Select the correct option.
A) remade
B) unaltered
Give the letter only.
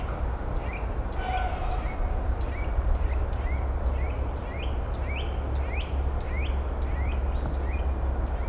B